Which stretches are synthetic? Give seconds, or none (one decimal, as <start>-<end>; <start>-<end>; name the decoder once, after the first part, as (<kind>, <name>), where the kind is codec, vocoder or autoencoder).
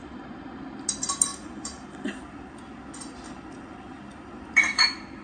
none